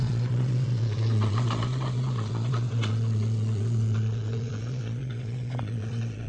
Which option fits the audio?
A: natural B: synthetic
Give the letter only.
B